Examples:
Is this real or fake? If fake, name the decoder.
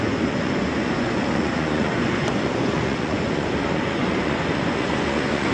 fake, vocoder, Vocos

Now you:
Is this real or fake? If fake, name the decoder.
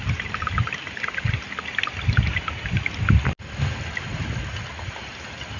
real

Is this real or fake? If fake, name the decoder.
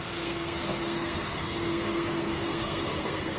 fake, codec, SNAC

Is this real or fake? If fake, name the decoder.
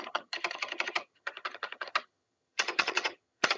fake, vocoder, HiFi-GAN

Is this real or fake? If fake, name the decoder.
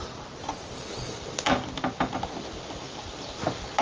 real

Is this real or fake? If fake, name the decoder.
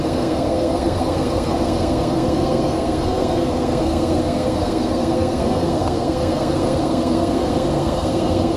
fake, codec, SNAC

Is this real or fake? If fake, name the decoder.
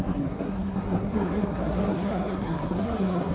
fake, codec, SNAC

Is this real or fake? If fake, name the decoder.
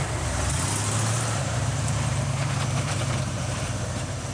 fake, vocoder, BigVGAN v2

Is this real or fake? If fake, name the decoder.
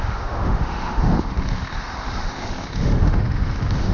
fake, autoencoder, DAC-VAE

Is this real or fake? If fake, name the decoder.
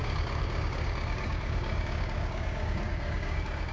fake, codec, DAC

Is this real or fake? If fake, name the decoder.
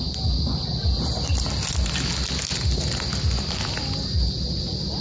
real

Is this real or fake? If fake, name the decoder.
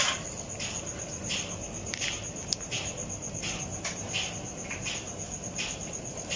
real